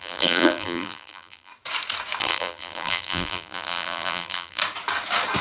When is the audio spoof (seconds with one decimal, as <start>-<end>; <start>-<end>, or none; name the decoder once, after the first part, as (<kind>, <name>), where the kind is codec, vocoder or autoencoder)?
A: 0.0-1.5 (vocoder, BigVGAN v2); 2.2-4.6